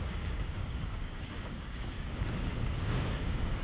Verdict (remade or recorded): remade